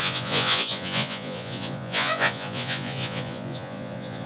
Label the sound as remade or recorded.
remade